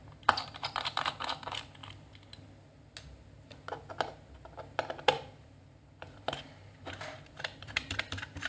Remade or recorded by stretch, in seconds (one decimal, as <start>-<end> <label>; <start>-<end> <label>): 0.0-1.8 remade; 1.8-4.9 recorded; 4.9-8.5 remade

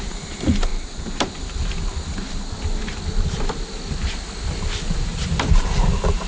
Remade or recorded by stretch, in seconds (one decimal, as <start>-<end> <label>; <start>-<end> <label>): 0.0-0.7 recorded; 0.7-1.3 remade; 1.3-5.1 recorded; 5.1-5.8 remade; 5.8-6.3 recorded

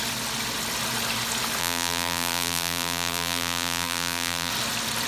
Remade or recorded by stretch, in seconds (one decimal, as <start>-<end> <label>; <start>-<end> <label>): 0.0-1.6 recorded; 1.6-4.5 remade; 4.5-5.1 recorded

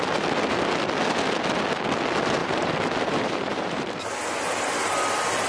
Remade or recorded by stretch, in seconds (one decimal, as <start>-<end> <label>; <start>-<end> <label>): 0.0-2.4 recorded; 2.4-4.0 remade; 4.0-5.5 recorded

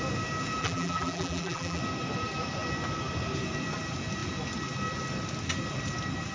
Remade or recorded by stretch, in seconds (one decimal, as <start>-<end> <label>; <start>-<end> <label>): 0.0-0.6 recorded; 0.6-1.8 remade; 1.8-6.3 recorded

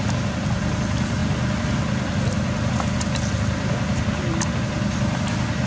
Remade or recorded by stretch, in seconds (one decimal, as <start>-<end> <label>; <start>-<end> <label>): 0.0-5.7 recorded